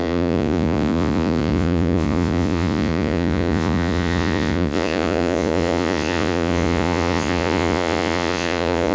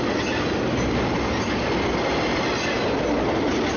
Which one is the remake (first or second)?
first